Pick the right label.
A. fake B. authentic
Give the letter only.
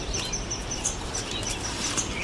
B